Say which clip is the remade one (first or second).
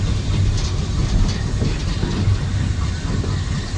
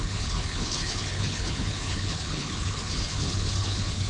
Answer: second